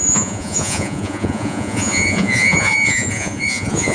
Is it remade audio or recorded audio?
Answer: remade